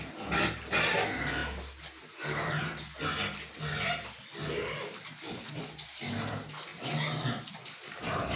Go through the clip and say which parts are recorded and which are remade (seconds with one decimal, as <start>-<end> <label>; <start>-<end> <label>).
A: 0.0-8.4 recorded